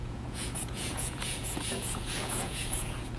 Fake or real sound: fake